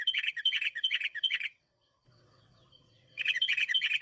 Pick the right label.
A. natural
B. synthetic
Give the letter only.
B